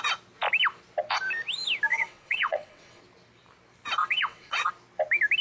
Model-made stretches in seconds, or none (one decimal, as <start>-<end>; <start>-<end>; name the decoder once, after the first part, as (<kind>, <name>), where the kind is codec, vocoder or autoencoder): 1.9-3.0 (vocoder, WaveNeXt); 4.0-4.7